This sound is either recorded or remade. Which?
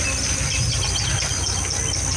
recorded